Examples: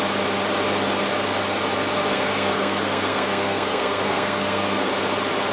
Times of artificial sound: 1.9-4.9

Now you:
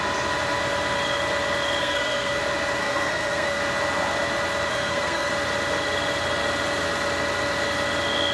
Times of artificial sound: 1.8-2.4; 2.8-3.6; 4.7-5.3

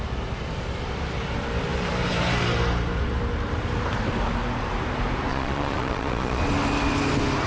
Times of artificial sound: 5.3-6.4